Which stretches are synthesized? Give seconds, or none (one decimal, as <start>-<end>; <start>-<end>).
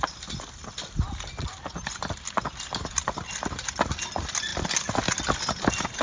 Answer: none